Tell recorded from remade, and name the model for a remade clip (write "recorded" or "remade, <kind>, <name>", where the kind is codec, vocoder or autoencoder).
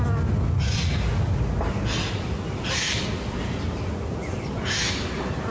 recorded